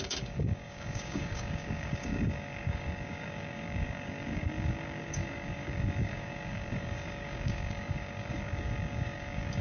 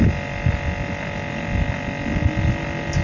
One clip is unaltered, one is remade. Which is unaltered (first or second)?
second